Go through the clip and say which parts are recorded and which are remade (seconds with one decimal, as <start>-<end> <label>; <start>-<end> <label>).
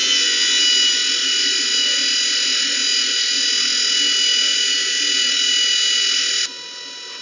0.0-0.6 remade; 0.6-7.2 recorded